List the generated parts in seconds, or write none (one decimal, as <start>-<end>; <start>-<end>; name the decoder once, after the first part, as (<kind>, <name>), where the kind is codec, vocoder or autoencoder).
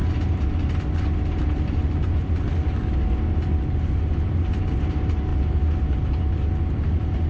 none